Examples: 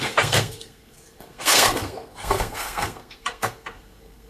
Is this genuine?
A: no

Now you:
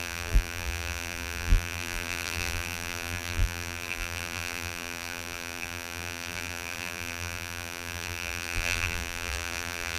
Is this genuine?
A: no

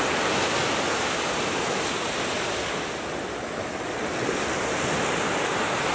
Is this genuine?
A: yes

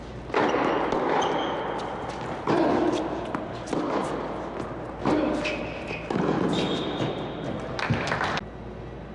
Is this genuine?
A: yes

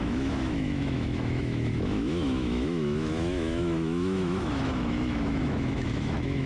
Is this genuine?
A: no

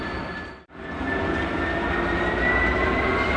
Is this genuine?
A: yes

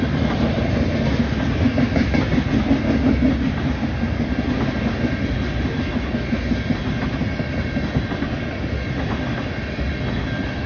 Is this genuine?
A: yes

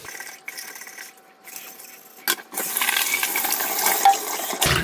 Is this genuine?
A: yes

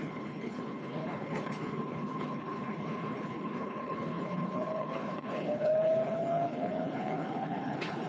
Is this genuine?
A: no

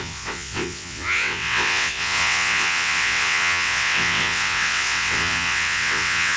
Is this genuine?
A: no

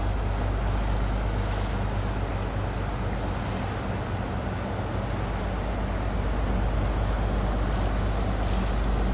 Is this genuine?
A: yes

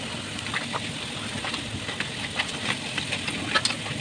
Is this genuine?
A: yes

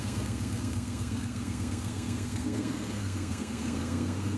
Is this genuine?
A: no